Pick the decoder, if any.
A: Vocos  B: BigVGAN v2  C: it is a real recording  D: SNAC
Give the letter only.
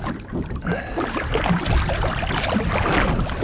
C